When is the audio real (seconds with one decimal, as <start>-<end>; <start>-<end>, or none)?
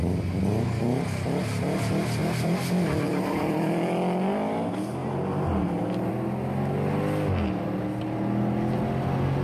0.0-9.4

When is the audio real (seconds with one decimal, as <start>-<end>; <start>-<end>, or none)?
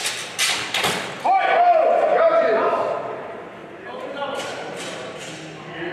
0.0-3.6; 4.8-5.9